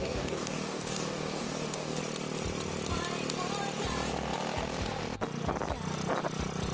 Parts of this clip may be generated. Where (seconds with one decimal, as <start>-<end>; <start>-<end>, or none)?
0.0-2.0

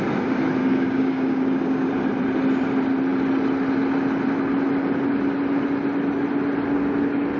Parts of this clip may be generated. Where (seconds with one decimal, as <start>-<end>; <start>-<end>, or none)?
0.6-1.9

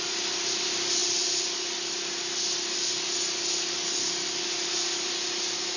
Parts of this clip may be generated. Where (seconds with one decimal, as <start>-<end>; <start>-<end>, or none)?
none

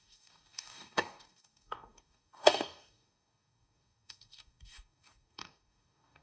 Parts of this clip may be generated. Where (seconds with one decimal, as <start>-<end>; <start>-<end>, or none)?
0.0-6.2

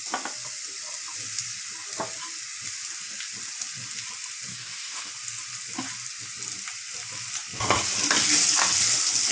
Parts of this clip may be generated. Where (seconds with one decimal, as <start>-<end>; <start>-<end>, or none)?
4.5-5.1